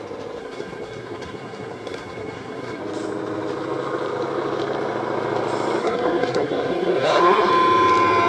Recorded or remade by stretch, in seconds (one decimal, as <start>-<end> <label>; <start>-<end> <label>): 0.0-0.4 recorded; 0.4-2.8 remade; 2.8-5.8 recorded; 5.8-7.5 remade; 7.5-8.3 recorded